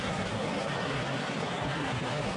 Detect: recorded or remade remade